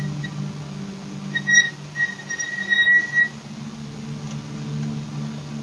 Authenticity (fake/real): real